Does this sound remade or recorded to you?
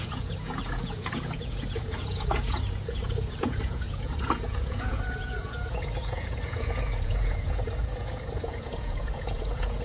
remade